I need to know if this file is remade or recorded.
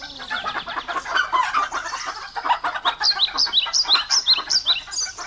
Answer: recorded